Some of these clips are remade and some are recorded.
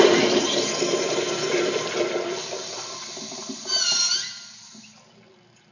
recorded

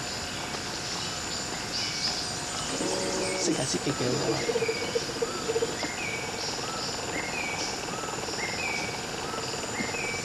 recorded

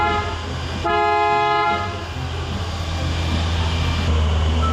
recorded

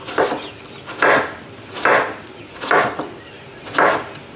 recorded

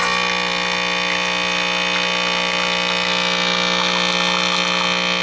recorded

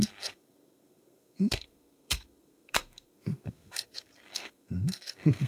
remade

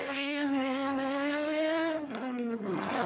remade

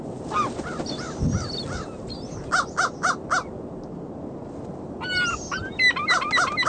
recorded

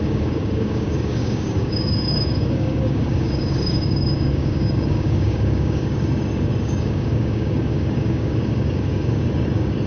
remade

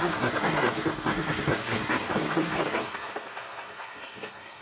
remade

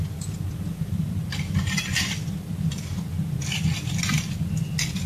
recorded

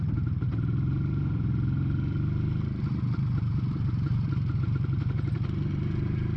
remade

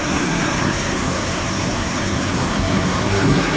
remade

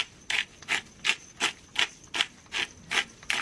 recorded